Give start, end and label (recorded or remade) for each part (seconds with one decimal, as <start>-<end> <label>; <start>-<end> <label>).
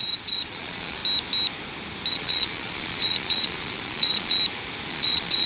0.0-1.0 remade; 1.0-2.1 recorded; 2.1-4.4 remade; 4.4-4.9 recorded; 4.9-5.5 remade